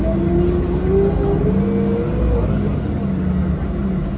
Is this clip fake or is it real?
real